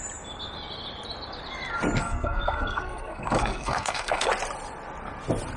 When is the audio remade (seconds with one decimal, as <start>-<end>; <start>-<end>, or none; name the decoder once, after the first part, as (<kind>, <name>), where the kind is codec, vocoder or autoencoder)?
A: 2.0-4.3 (codec, SNAC)